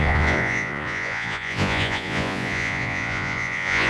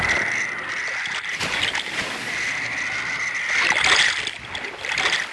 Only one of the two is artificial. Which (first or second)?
first